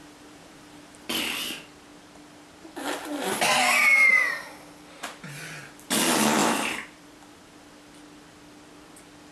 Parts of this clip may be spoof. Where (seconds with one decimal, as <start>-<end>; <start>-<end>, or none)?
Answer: 0.0-1.2; 6.4-7.7